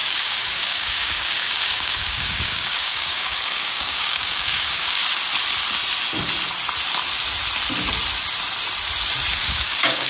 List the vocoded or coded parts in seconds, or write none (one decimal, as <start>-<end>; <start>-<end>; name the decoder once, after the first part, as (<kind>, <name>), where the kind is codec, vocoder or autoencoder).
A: 0.0-5.0 (codec, DAC); 9.4-10.1